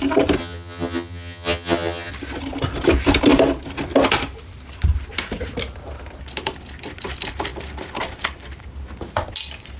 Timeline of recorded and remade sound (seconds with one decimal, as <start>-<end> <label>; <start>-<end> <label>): 0.0-0.4 recorded; 0.4-2.1 remade; 2.1-9.8 recorded